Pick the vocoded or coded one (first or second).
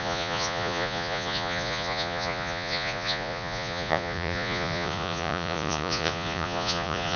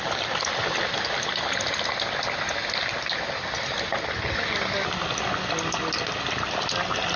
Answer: first